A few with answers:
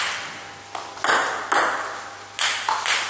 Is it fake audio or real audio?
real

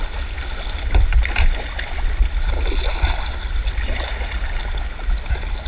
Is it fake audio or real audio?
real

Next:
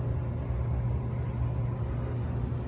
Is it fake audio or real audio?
real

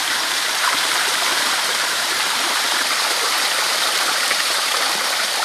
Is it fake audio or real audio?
fake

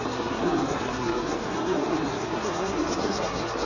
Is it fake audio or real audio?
fake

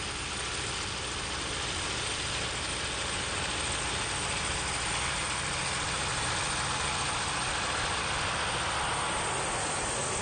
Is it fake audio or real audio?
real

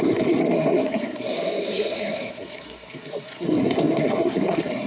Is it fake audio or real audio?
fake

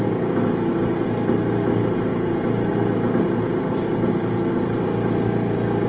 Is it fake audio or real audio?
real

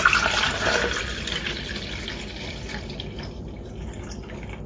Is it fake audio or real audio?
real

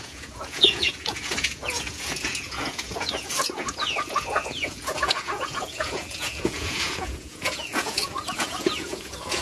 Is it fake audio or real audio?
fake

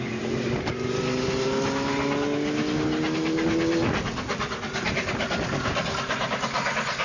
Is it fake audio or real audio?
real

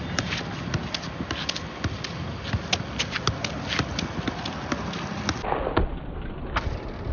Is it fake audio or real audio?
real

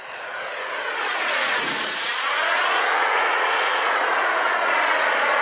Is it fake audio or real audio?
fake